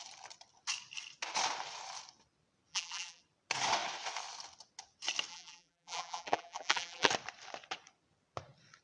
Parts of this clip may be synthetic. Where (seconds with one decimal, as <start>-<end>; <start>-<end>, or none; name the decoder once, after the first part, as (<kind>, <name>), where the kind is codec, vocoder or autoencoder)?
2.7-3.2 (vocoder, BigVGAN v2); 5.3-7.1